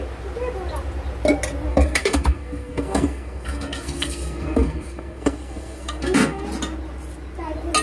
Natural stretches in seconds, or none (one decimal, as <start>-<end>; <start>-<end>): 0.0-1.7; 6.4-7.8

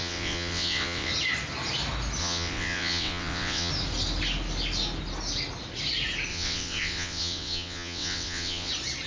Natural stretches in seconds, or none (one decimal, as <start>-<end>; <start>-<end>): 1.1-2.2; 3.7-6.3; 8.7-9.1

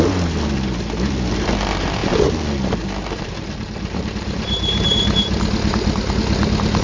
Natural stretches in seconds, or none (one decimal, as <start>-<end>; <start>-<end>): 0.0-2.0; 6.1-6.8

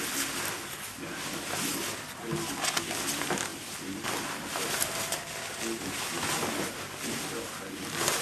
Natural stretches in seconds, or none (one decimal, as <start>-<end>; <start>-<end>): 0.0-8.2

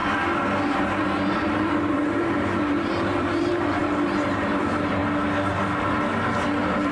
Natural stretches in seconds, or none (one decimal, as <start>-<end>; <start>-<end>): 0.0-0.8; 5.0-6.4

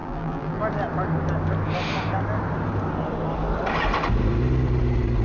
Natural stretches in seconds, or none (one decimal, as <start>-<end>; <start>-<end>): 0.6-5.2

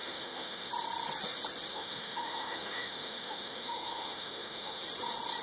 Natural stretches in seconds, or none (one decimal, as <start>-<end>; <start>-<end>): 0.7-1.7; 4.8-5.4

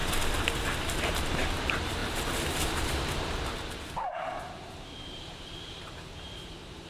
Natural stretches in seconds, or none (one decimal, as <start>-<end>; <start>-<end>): 0.0-0.6